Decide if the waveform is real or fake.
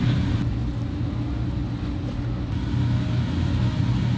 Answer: real